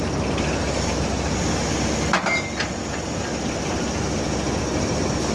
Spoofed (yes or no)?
no